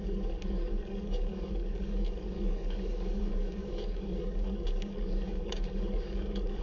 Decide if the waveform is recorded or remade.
remade